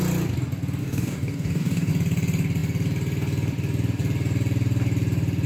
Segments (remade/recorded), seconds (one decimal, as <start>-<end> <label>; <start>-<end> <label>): 0.0-0.8 recorded; 0.8-1.9 remade; 1.9-5.5 recorded